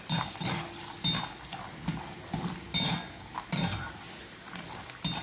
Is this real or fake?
real